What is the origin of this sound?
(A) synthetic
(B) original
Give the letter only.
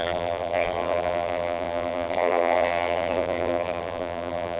A